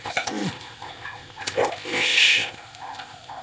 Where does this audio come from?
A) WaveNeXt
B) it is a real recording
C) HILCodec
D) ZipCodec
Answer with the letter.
D